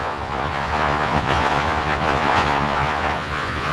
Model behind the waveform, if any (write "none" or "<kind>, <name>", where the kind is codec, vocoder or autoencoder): vocoder, Vocos